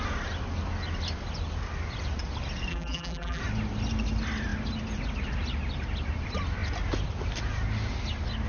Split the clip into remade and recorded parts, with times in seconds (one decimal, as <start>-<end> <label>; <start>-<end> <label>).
0.0-2.7 recorded; 2.7-3.4 remade; 3.4-8.5 recorded